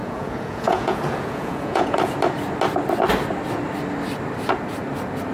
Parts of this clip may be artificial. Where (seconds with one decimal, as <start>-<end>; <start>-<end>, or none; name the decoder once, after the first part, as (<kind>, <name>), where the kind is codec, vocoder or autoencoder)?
0.0-2.1 (vocoder, Vocos)